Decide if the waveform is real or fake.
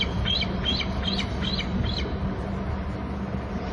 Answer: real